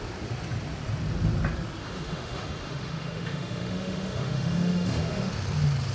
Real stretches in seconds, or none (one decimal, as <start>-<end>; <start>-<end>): 0.0-1.8; 5.3-5.9